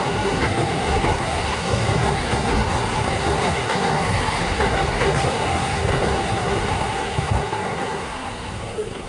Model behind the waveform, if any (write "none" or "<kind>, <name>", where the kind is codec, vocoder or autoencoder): codec, SNAC